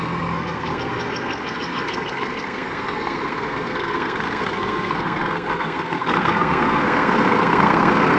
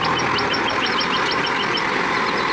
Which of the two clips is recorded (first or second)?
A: second